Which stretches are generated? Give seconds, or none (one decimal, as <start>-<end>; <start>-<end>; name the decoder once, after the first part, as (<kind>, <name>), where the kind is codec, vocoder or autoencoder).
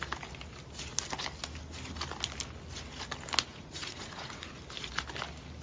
3.5-4.6 (vocoder, Vocos)